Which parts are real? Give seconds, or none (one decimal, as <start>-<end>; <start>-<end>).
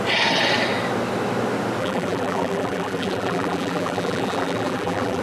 0.0-1.8